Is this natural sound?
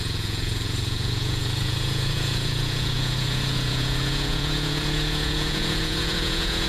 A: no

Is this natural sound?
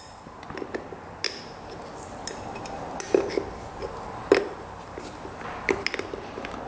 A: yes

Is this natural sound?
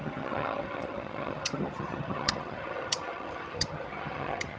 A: no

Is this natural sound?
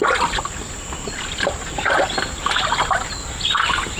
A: yes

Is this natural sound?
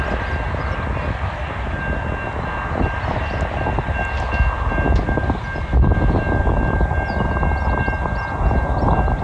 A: yes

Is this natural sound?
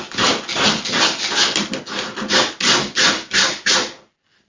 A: yes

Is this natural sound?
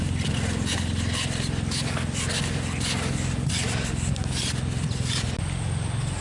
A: yes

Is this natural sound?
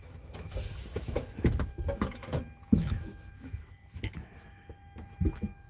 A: no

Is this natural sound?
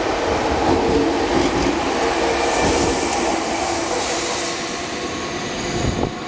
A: yes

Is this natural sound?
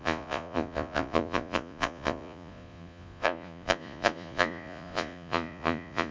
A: no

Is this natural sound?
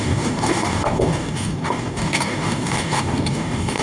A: no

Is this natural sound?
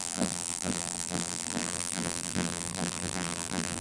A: no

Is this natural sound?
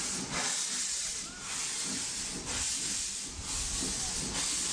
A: yes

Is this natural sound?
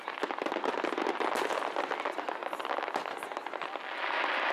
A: yes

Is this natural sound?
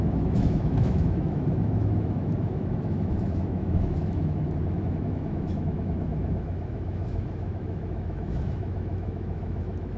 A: no